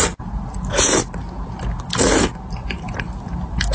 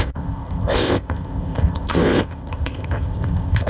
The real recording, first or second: first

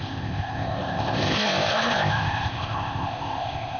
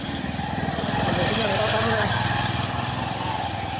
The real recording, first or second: second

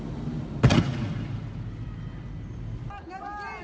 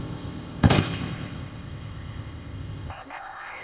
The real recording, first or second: first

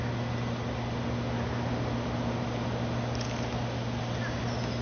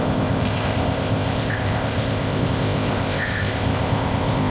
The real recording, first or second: first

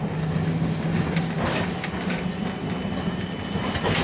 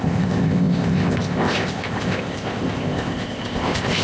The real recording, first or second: first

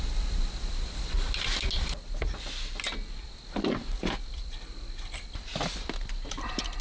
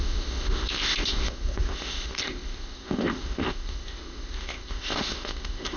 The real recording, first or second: first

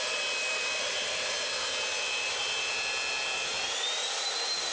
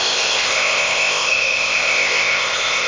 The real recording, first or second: first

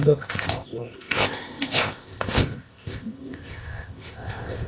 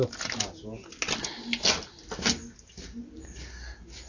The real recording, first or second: second